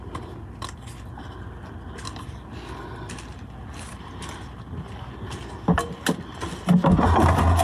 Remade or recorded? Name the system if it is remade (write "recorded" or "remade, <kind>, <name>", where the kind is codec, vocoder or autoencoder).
recorded